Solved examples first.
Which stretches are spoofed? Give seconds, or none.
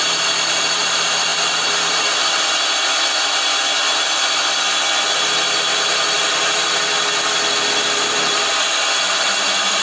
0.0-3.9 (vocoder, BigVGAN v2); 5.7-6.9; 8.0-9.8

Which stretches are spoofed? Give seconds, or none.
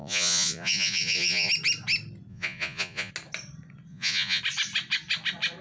0.0-1.5 (vocoder, Vocos); 2.3-3.1; 3.9-4.4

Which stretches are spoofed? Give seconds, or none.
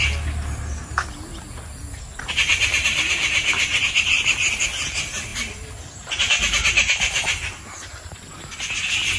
2.5-4.6 (vocoder, BigVGAN v2); 5.3-7.6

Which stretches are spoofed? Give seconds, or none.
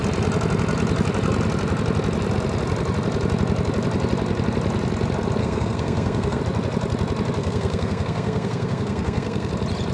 5.4-6.4 (codec, SNAC); 7.4-9.5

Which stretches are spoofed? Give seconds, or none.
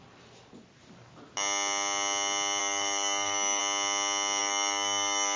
2.6-3.6 (autoencoder, DAC-VAE); 4.4-5.4